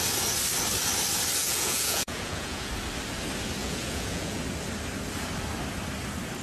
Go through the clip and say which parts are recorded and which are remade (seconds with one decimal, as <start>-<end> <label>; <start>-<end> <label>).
0.0-1.4 recorded; 1.4-2.7 remade; 2.7-3.6 recorded; 3.6-4.4 remade; 4.4-6.4 recorded